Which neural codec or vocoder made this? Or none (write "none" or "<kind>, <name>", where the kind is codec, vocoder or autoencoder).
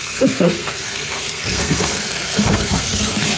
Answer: codec, SNAC